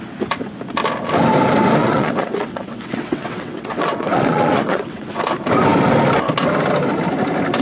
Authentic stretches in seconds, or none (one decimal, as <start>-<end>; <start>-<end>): 0.0-1.8; 5.1-7.6